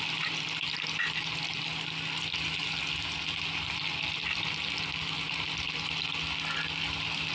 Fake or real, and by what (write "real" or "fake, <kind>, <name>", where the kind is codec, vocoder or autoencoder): real